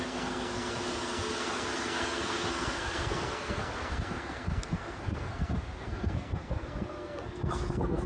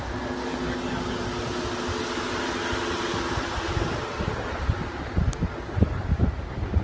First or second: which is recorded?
second